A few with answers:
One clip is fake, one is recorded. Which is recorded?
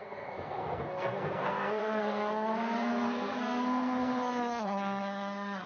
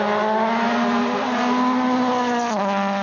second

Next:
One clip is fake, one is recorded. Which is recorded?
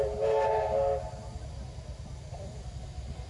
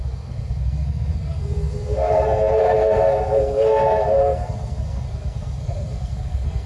first